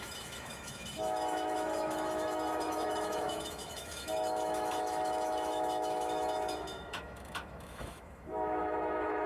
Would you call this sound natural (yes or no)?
no